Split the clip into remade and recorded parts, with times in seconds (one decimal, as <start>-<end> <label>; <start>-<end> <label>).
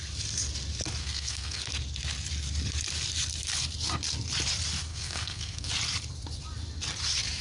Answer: 0.0-1.0 recorded; 1.0-1.6 remade; 1.6-4.9 recorded; 4.9-5.7 remade; 5.7-7.4 recorded